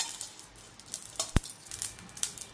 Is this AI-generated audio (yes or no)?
no